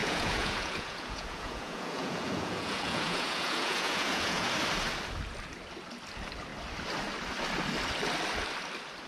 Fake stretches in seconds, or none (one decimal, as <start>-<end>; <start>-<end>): 0.0-4.5